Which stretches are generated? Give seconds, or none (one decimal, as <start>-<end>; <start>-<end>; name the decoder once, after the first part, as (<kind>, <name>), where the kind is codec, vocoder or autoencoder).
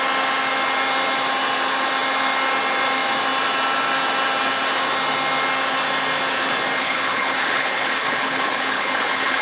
6.8-9.4 (codec, HILCodec)